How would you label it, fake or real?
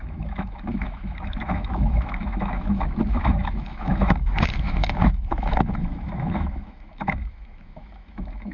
fake